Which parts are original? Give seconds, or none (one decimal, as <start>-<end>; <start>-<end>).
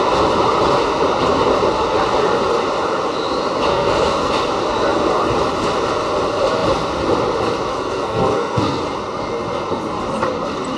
0.0-3.7; 4.3-7.7; 8.8-10.8